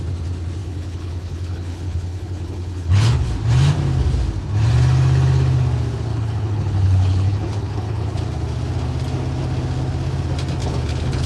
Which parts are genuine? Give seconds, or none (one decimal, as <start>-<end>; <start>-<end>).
0.0-0.6; 3.3-6.1; 8.2-10.6